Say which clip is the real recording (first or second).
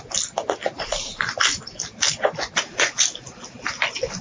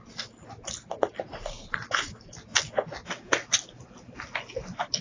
second